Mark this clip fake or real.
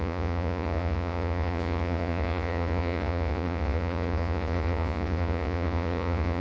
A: fake